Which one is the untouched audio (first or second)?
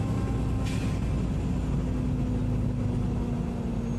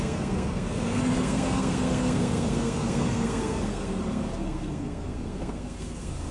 first